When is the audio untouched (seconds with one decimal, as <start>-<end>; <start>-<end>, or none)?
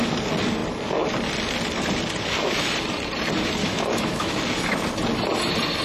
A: 0.0-3.6; 4.4-5.8